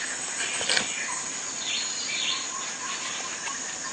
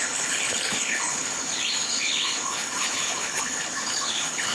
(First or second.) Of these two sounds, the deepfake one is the second